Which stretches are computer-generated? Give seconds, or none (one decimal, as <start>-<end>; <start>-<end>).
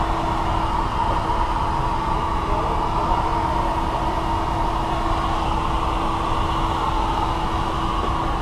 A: none